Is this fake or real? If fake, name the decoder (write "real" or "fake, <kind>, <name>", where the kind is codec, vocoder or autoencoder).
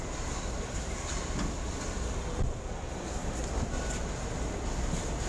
real